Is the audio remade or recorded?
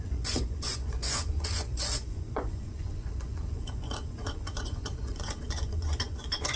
remade